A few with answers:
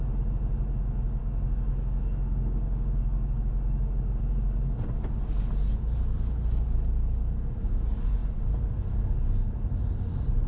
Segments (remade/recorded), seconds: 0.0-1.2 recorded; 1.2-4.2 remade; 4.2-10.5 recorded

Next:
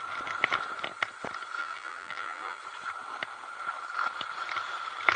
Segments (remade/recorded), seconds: 0.0-1.6 recorded; 1.6-2.6 remade; 2.6-5.2 recorded

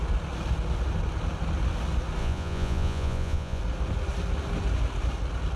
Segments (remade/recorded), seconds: 0.0-2.2 recorded; 2.2-3.6 remade; 3.6-5.6 recorded

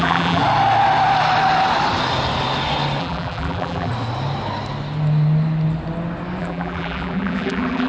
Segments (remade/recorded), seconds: 0.0-0.4 remade; 0.4-3.0 recorded; 3.0-3.9 remade; 3.9-6.4 recorded; 6.4-7.9 remade

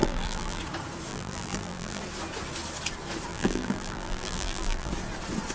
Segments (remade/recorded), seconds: 0.0-0.6 remade; 0.6-1.1 recorded; 1.1-2.0 remade; 2.0-3.3 recorded; 3.3-4.9 remade; 4.9-5.5 recorded